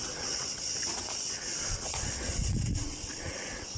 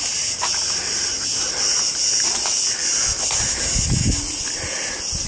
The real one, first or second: second